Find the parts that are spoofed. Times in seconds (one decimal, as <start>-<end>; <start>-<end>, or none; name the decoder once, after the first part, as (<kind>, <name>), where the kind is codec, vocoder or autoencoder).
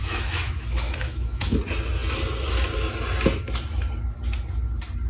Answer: 0.0-1.6 (autoencoder, DAC-VAE)